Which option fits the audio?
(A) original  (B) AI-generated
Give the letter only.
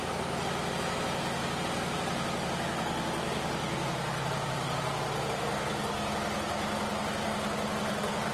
A